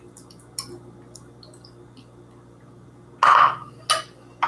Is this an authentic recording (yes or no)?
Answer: yes